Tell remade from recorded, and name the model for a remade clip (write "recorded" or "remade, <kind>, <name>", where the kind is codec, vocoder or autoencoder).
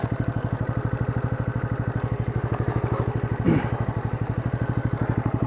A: recorded